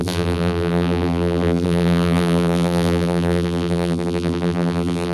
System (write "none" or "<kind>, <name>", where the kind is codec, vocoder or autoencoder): vocoder, BigVGAN v2